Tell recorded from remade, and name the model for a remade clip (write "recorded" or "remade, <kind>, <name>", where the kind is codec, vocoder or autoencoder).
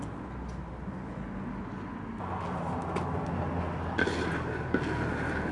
recorded